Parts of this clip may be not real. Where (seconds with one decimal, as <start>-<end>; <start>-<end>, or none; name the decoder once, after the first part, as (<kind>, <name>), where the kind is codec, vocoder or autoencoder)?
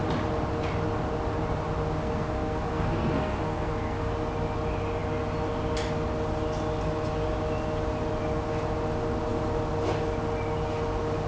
2.0-4.1 (codec, SNAC)